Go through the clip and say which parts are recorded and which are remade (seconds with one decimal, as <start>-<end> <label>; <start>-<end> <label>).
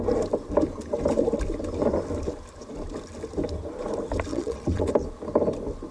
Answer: 0.0-4.3 recorded; 4.3-4.9 remade; 4.9-5.9 recorded